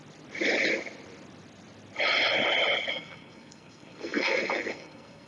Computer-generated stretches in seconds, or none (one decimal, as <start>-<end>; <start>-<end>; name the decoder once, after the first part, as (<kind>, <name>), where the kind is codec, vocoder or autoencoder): 2.9-5.3 (codec, SNAC)